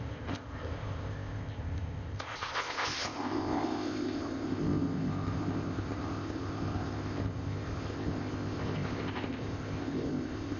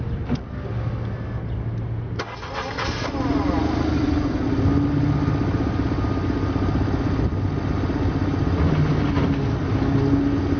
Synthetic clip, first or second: first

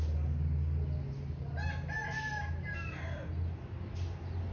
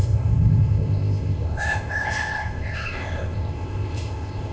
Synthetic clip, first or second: second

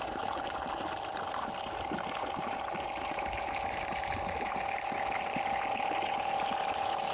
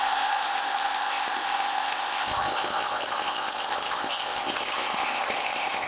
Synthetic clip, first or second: second